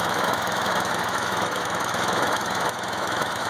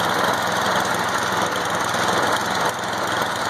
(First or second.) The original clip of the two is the second